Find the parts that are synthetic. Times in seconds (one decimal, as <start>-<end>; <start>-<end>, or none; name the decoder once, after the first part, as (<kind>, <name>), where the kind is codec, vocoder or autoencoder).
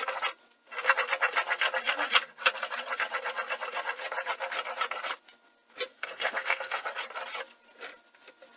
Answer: 5.9-6.8 (codec, SNAC)